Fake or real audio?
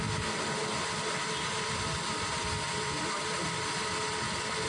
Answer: real